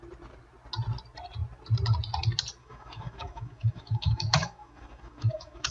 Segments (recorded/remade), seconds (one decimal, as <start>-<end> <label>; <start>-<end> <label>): 0.0-2.6 recorded; 2.6-5.7 remade